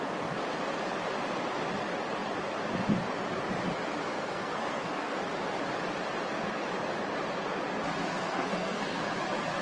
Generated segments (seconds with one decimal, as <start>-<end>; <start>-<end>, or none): 4.1-5.2; 8.1-9.1